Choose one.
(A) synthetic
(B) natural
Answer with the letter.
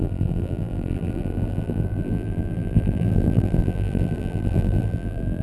A